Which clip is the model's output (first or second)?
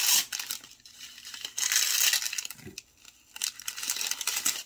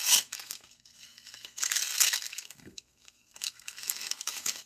second